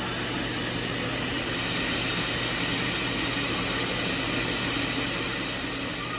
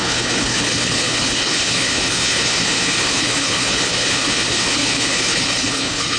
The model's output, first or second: second